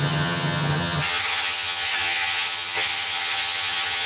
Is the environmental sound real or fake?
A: fake